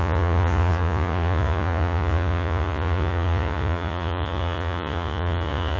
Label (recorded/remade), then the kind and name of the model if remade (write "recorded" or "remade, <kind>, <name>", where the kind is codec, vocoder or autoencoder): remade, vocoder, Vocos